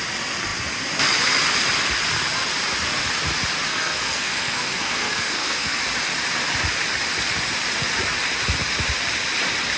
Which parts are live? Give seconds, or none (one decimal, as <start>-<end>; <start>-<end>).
0.0-3.7; 5.8-9.8